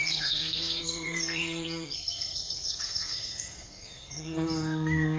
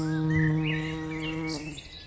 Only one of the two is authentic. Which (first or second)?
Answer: second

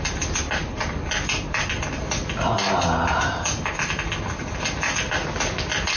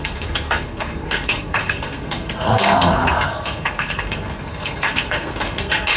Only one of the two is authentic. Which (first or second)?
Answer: first